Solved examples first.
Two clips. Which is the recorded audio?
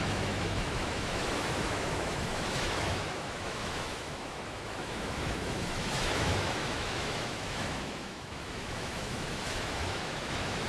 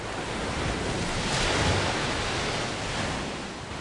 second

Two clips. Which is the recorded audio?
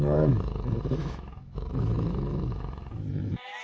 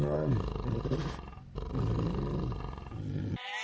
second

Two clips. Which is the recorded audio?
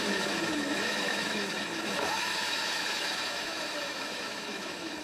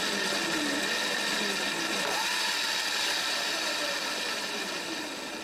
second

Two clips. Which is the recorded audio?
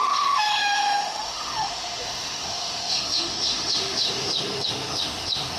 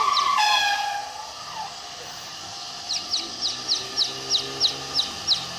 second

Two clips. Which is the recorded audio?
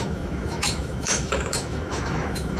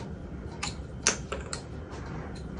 second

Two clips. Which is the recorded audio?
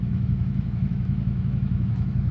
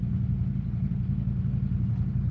second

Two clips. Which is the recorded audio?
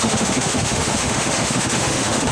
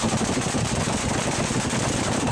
second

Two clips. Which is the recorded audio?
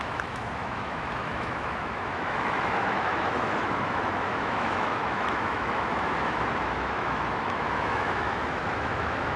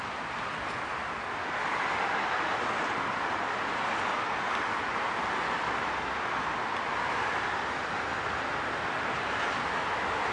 second